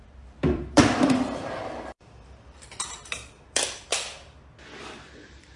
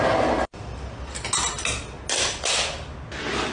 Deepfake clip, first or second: first